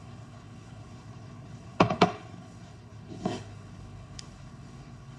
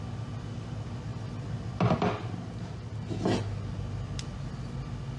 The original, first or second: second